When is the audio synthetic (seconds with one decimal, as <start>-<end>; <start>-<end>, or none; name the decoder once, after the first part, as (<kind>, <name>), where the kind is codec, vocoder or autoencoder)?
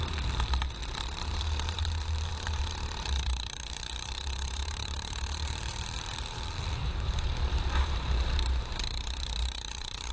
0.0-0.8 (vocoder, BigVGAN v2); 1.3-10.1